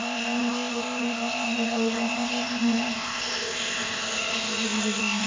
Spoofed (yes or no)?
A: yes